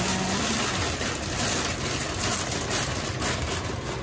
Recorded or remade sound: recorded